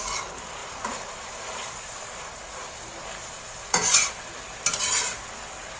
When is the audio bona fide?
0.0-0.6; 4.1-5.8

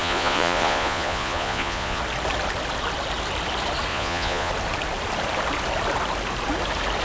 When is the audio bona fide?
2.0-3.9; 4.5-7.0

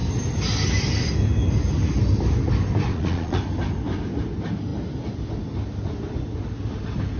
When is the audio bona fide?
0.0-2.9; 3.4-7.2

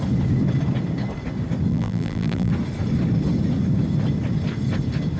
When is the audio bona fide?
0.0-1.7; 2.5-5.2

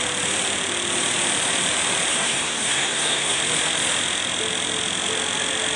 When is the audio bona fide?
0.0-2.1; 3.4-5.8

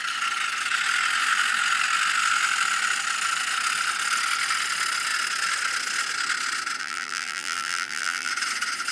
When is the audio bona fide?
0.0-6.8; 8.3-8.9

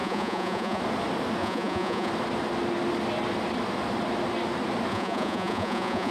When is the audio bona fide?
0.8-1.4; 2.1-4.9

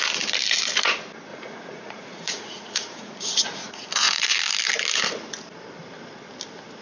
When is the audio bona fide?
0.0-1.3; 4.4-6.8